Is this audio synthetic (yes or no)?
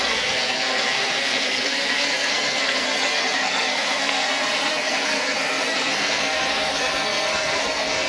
yes